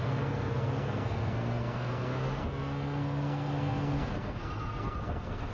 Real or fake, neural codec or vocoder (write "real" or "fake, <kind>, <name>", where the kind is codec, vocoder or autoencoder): fake, codec, SNAC